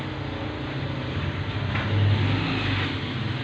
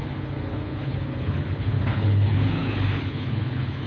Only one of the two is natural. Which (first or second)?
first